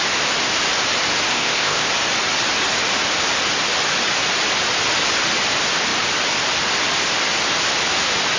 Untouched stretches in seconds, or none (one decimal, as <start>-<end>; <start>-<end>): 0.0-1.3; 1.9-8.4